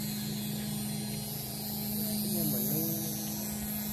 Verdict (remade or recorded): recorded